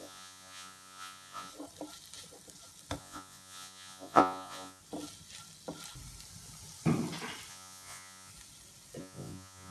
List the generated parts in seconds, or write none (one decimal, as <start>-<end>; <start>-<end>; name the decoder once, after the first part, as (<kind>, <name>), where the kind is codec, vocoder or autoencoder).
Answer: 0.0-1.5 (vocoder, Vocos); 3.0-4.8; 7.5-8.3; 9.0-9.7